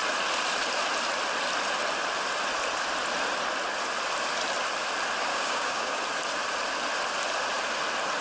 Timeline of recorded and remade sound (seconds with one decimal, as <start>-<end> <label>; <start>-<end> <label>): 0.0-5.3 recorded; 5.3-6.0 remade; 6.0-8.2 recorded